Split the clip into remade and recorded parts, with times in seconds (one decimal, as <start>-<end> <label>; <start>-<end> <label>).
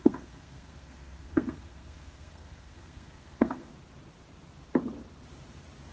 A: 0.0-3.7 remade; 3.7-5.9 recorded